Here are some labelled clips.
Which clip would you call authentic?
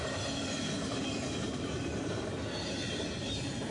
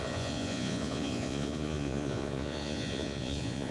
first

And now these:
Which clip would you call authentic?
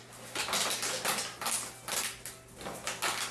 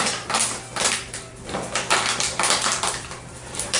first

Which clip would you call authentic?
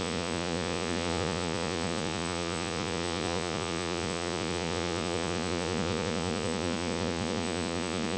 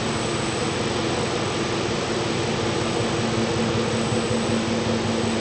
second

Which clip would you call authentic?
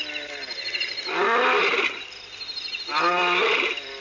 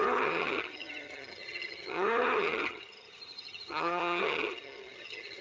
first